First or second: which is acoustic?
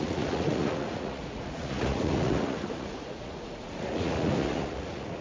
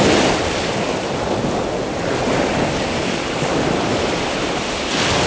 second